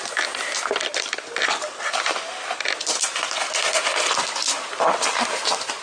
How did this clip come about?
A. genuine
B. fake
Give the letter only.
A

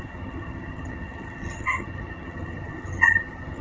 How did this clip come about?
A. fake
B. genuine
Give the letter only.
A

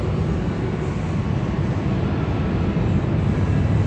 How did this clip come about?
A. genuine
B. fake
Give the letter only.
A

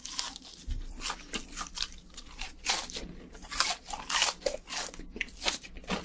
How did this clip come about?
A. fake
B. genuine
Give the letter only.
B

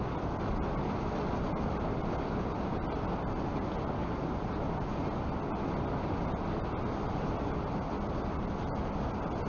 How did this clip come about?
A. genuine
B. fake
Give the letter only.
A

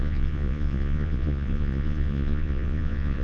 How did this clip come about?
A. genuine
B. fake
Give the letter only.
B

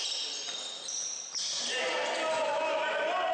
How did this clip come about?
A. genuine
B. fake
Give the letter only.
A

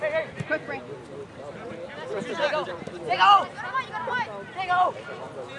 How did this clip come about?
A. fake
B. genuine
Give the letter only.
B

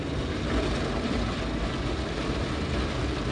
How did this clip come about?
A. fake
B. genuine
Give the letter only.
B